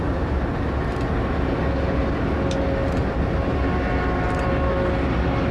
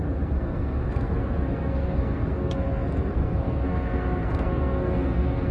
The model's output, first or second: second